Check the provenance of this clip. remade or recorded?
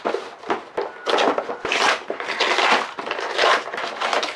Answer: recorded